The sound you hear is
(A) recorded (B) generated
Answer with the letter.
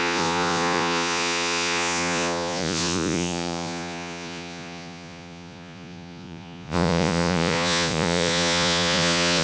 B